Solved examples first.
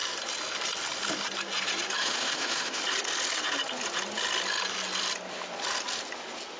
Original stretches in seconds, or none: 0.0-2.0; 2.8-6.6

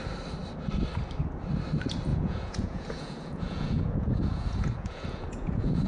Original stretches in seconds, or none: 0.0-2.1

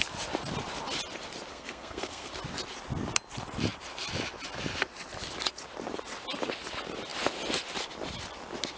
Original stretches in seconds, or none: 0.0-1.5; 2.3-8.8

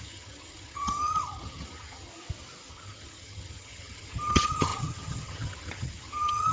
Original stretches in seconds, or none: 2.1-2.7

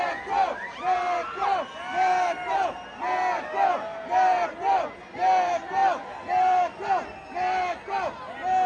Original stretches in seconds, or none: 0.0-8.7

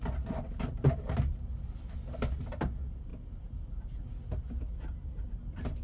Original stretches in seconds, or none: 0.0-5.8